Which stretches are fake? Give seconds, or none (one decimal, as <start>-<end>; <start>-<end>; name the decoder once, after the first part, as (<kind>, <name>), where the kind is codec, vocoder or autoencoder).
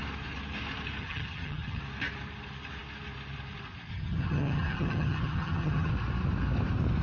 1.0-1.8 (vocoder, HiFi-GAN); 3.9-5.9